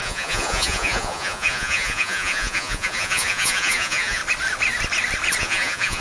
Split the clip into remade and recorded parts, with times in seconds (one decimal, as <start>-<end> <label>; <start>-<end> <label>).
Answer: 0.0-4.2 remade; 4.2-5.4 recorded; 5.4-6.0 remade